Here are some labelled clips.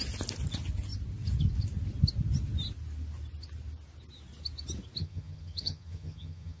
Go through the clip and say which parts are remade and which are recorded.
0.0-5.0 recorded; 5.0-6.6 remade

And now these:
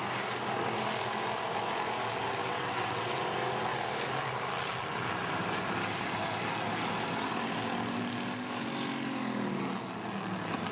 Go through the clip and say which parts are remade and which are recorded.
0.0-2.4 recorded; 2.4-3.2 remade; 3.2-10.7 recorded

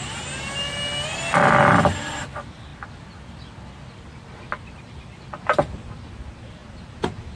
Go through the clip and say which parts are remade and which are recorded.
0.0-1.1 recorded; 1.1-2.2 remade; 2.2-7.4 recorded

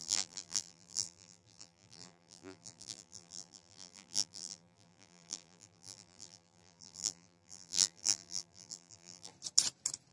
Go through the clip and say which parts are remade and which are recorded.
0.0-9.3 remade; 9.3-10.1 recorded

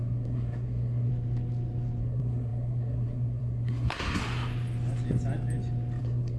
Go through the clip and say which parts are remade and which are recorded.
0.0-1.1 remade; 1.1-2.0 recorded; 2.0-4.2 remade; 4.2-6.0 recorded; 6.0-6.4 remade

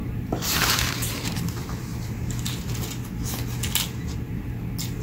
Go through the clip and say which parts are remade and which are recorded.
0.0-1.1 remade; 1.1-1.9 recorded; 1.9-2.7 remade; 2.7-5.0 recorded

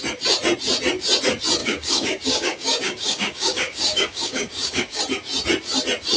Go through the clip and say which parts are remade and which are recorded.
0.0-1.6 recorded; 1.6-5.0 remade; 5.0-6.2 recorded